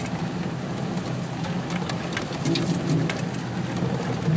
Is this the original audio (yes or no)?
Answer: yes